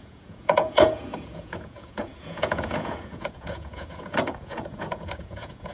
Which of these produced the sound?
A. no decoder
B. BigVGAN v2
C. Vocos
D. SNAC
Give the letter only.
C